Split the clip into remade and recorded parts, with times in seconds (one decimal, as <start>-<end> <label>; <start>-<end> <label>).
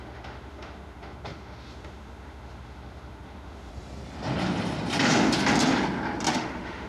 0.0-3.7 remade; 3.7-6.3 recorded; 6.3-6.9 remade